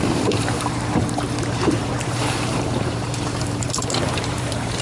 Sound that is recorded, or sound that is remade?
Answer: remade